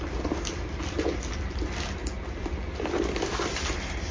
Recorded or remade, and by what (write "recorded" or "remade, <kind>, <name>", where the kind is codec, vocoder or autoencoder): recorded